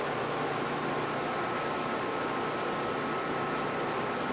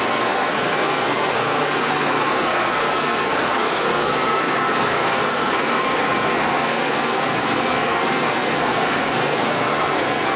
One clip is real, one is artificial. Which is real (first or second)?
first